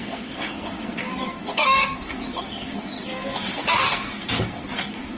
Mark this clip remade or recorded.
remade